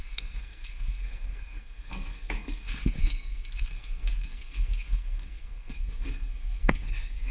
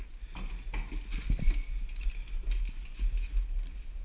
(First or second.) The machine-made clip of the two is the first